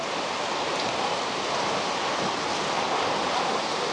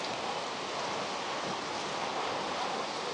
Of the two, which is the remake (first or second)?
first